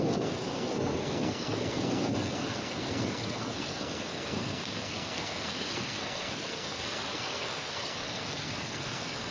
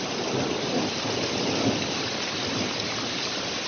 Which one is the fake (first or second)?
first